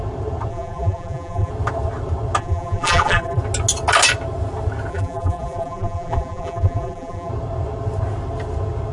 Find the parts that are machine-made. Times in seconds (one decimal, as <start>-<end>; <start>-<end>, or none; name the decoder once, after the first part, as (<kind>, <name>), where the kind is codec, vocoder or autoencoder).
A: 0.5-1.5 (vocoder, BigVGAN v2); 2.4-3.4; 4.9-7.3

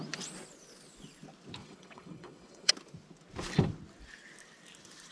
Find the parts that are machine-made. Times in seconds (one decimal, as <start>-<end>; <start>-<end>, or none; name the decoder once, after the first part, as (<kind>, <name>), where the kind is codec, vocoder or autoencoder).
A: 1.6-2.7 (vocoder, WaveNeXt)

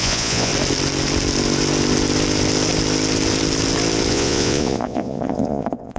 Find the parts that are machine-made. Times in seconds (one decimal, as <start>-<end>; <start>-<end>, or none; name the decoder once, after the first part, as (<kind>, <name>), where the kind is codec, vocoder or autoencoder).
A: 0.0-0.5 (vocoder, Vocos); 4.1-6.0

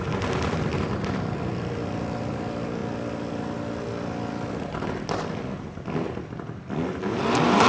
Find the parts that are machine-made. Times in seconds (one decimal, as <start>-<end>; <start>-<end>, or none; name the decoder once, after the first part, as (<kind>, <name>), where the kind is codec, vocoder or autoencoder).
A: none

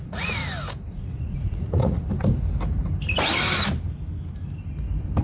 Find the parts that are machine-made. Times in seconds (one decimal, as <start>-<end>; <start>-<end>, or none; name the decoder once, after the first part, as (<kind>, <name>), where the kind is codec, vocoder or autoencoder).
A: 0.0-0.4 (vocoder, Vocos); 0.9-2.1